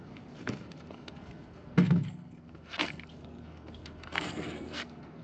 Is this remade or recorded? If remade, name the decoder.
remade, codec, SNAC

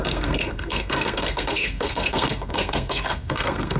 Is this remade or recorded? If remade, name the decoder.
remade, codec, SNAC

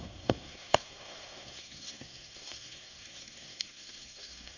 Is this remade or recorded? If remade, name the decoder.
remade, codec, SNAC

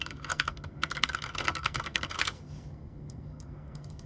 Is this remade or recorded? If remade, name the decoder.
remade, codec, SNAC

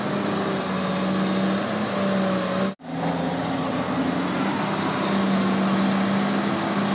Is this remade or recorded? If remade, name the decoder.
recorded